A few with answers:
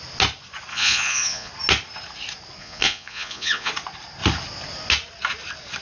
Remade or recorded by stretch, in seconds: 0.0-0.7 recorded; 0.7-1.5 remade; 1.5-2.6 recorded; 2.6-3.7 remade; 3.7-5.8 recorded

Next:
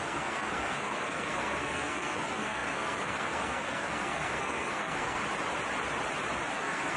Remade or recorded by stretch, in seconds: 0.0-5.2 remade; 5.2-6.5 recorded; 6.5-7.0 remade